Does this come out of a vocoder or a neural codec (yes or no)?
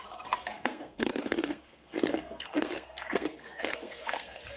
yes